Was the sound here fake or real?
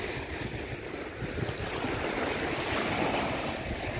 real